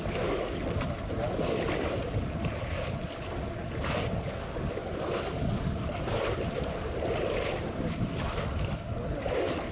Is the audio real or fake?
real